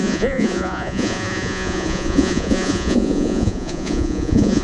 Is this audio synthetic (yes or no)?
yes